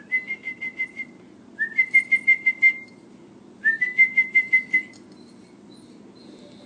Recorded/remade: remade